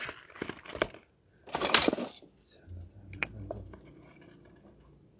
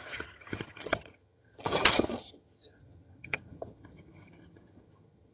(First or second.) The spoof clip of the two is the second